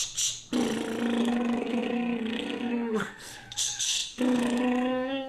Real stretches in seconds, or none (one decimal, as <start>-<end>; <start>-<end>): 0.0-1.2